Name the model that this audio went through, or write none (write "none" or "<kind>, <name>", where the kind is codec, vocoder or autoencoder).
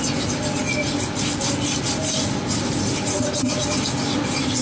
none